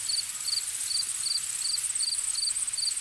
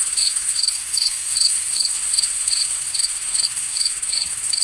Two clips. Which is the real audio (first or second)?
first